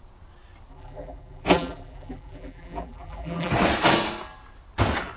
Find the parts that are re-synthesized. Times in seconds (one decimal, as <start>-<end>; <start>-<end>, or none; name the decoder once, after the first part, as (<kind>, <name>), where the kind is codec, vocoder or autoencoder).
0.7-3.5 (vocoder, BigVGAN v2)